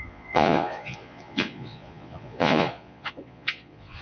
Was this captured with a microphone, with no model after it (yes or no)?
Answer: no